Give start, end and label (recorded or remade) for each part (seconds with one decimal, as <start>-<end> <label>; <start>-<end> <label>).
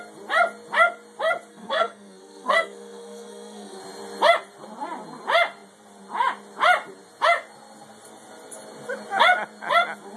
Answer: 0.0-1.5 recorded; 1.5-3.8 remade; 3.8-10.2 recorded